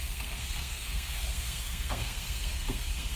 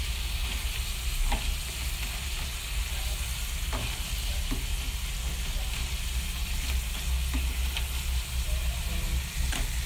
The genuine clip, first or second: second